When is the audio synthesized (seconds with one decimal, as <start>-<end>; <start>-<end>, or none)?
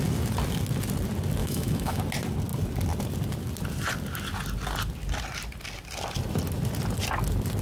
1.4-2.0